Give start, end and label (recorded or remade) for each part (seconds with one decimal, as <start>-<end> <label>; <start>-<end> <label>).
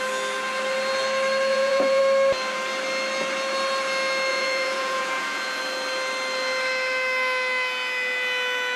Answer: 0.0-1.5 recorded; 1.5-2.0 remade; 2.0-4.3 recorded; 4.3-5.6 remade; 5.6-8.8 recorded